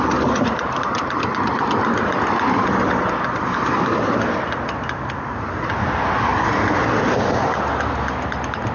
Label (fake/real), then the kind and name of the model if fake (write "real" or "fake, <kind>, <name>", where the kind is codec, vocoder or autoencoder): real